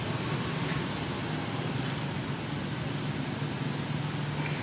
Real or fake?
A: real